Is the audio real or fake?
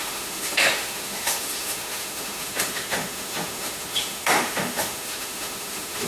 fake